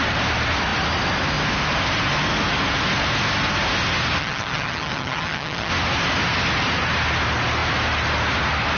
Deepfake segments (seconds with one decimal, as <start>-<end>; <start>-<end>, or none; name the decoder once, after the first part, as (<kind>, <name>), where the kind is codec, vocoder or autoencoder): 4.2-5.7 (vocoder, HiFi-GAN)